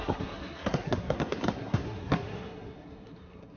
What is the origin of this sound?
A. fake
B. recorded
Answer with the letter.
A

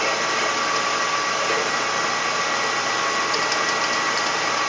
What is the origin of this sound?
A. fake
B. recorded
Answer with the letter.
B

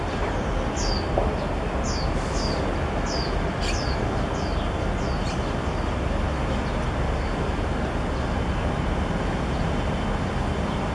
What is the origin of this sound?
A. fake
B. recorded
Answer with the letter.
B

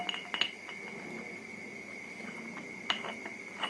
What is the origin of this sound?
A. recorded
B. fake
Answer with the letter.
A